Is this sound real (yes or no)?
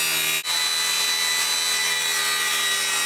yes